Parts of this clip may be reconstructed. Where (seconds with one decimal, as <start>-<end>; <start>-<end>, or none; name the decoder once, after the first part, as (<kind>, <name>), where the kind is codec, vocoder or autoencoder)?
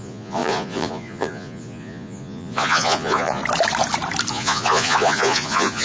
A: 0.0-3.4 (vocoder, Vocos); 4.3-5.8